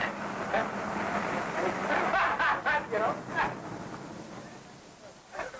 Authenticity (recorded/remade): recorded